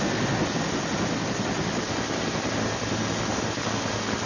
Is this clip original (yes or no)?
yes